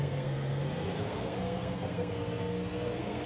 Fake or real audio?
fake